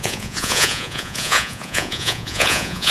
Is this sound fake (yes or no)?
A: yes